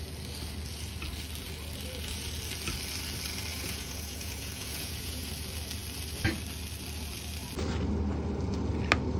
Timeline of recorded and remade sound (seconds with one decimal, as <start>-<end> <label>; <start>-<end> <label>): 0.0-3.5 recorded; 3.5-5.3 remade; 5.3-9.2 recorded